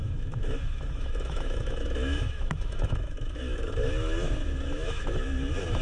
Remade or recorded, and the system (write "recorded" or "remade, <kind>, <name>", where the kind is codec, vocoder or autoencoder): remade, autoencoder, DAC-VAE